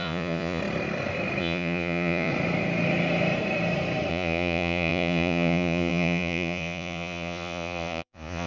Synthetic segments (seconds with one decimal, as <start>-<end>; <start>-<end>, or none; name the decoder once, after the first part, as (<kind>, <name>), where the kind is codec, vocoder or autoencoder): 0.0-0.6 (vocoder, Vocos); 1.4-2.3; 4.1-8.5